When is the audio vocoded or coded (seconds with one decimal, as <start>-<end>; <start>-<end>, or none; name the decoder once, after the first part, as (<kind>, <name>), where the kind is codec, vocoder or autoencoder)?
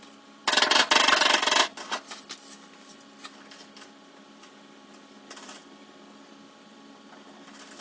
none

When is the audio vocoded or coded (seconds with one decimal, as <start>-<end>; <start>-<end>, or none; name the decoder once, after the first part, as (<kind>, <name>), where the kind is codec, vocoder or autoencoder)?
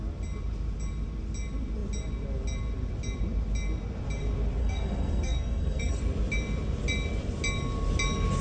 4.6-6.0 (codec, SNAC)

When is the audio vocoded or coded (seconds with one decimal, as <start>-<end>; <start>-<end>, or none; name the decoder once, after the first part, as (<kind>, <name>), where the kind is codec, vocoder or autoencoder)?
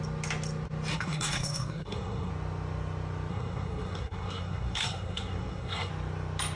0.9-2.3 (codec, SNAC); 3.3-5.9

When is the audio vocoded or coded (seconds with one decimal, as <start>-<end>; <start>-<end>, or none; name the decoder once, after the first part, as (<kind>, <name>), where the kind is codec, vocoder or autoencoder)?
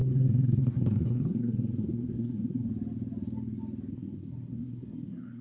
0.0-2.7 (codec, SNAC); 3.9-5.4